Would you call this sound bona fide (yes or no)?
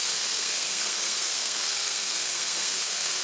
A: no